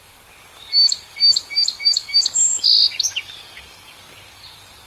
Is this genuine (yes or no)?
no